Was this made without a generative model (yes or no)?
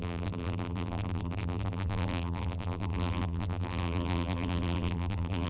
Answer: no